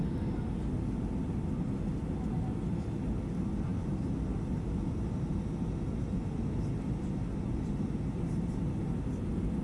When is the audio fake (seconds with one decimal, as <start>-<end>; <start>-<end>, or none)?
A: none